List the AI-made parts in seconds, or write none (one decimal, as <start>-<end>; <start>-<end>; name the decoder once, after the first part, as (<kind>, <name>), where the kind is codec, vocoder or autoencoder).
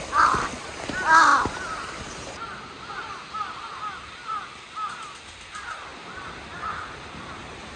none